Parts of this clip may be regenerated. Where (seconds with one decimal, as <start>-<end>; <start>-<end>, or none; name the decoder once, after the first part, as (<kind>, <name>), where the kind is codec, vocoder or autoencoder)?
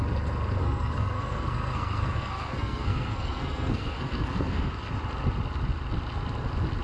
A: 0.6-4.7 (codec, SNAC)